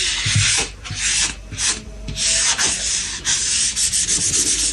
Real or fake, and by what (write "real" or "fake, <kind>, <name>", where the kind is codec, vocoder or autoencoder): real